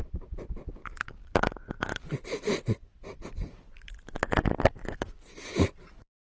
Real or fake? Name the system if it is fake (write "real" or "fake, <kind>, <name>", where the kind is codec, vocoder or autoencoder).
real